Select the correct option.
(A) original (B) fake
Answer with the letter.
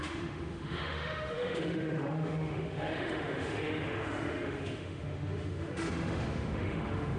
B